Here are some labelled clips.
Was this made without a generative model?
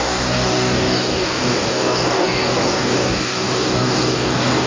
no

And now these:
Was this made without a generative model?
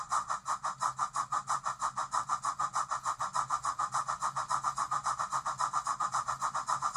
yes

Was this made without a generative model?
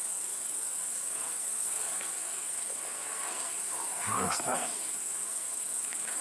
no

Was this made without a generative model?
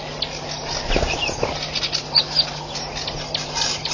yes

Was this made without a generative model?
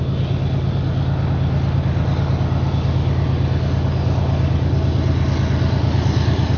yes